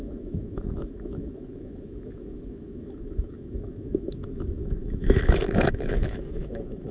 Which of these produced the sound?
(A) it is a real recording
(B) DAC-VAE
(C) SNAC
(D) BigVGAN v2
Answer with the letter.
B